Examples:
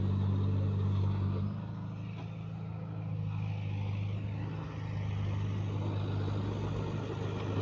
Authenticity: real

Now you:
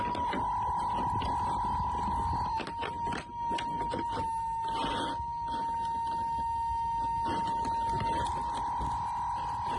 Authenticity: real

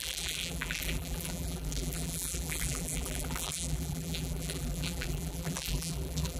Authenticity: fake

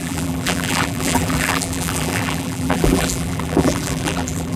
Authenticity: fake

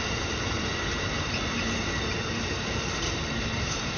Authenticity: fake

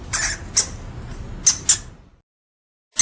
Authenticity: real